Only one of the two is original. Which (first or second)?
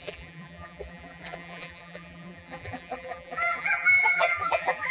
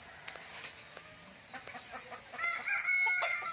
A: second